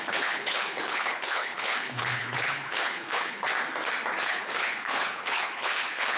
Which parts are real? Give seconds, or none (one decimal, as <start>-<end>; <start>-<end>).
3.5-4.2